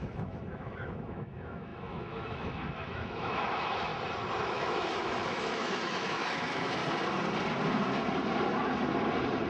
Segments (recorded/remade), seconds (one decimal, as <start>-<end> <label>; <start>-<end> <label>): 0.0-3.9 remade; 3.9-4.5 recorded; 4.5-6.8 remade; 6.8-9.5 recorded